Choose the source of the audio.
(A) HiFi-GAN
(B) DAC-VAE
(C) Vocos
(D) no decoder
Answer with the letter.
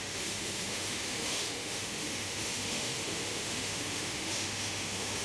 B